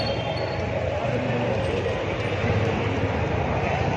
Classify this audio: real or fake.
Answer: real